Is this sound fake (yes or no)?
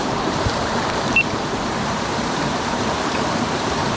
yes